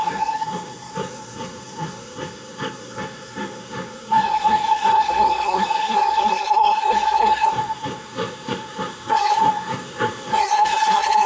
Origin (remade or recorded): remade